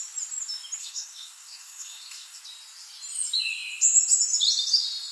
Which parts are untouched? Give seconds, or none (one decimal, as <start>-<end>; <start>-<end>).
0.0-0.8; 2.4-5.1